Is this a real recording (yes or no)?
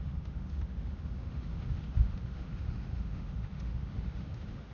no